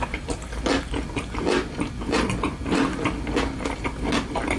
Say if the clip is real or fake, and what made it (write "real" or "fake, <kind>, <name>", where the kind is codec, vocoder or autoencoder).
real